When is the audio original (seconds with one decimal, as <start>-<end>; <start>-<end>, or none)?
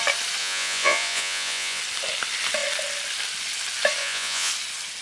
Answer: 0.0-0.4; 1.8-4.0; 4.5-5.0